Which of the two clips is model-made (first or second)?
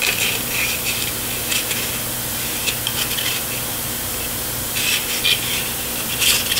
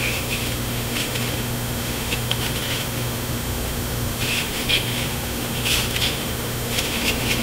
second